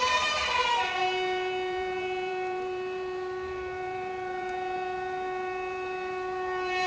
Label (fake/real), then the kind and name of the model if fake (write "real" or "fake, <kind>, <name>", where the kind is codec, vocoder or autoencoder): fake, vocoder, BigVGAN v2